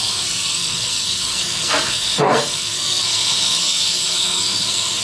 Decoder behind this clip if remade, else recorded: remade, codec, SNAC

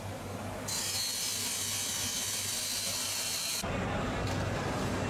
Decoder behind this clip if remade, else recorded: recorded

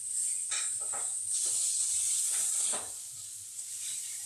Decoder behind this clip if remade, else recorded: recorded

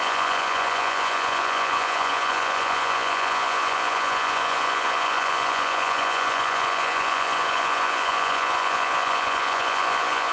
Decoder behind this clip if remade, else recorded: remade, vocoder, Vocos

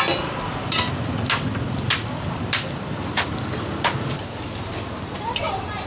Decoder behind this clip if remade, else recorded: recorded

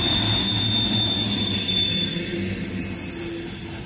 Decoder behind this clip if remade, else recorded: recorded